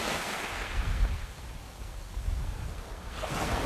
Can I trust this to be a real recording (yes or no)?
no